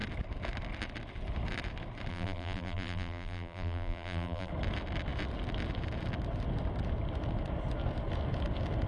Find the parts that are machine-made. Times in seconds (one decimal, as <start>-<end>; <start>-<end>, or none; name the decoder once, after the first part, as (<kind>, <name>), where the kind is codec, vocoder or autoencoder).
2.1-4.5 (vocoder, BigVGAN v2)